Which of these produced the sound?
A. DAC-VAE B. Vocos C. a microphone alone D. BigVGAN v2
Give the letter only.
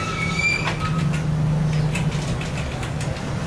C